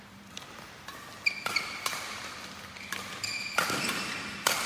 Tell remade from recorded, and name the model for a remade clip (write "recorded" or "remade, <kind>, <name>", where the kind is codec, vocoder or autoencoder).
recorded